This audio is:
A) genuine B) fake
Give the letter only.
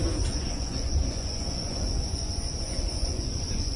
B